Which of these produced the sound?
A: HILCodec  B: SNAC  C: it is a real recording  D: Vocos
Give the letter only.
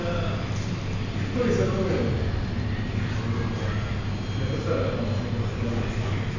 C